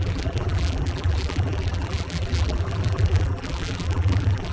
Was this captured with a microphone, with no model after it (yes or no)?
no